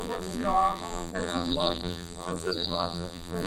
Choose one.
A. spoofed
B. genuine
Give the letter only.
A